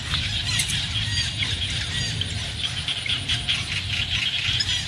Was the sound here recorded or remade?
recorded